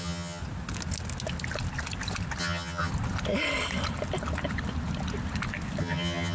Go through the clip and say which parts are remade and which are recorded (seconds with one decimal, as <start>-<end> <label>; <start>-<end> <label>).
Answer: 0.0-0.4 remade; 0.4-2.4 recorded; 2.4-2.9 remade; 2.9-5.8 recorded; 5.8-6.3 remade